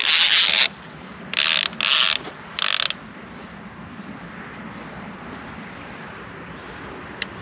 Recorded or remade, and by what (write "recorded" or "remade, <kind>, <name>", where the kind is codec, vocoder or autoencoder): recorded